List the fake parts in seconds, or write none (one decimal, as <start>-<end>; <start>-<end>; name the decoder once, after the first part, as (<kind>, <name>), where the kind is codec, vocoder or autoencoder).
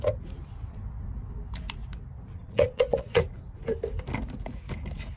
2.3-3.2 (vocoder, Vocos)